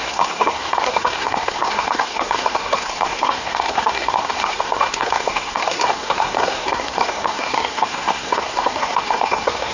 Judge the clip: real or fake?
fake